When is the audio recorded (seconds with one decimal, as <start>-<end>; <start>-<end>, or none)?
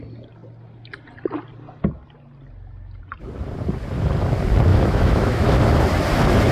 0.0-4.7; 5.4-6.5